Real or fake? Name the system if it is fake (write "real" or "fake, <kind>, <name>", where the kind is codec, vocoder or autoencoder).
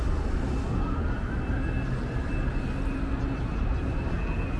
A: real